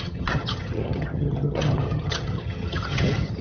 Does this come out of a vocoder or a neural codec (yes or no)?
yes